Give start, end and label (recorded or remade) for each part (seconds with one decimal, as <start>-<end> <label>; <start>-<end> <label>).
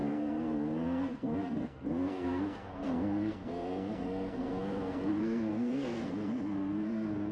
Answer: 0.0-7.3 remade